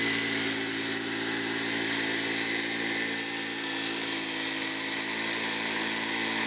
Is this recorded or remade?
recorded